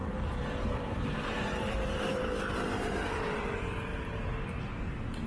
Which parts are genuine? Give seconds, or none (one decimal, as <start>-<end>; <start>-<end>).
3.2-5.3